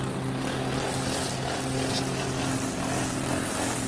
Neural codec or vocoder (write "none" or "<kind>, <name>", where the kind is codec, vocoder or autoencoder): none